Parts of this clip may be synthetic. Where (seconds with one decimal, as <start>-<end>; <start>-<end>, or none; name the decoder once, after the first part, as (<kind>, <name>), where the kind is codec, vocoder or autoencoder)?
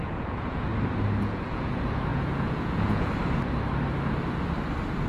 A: 0.0-0.7 (vocoder, Vocos); 1.2-3.2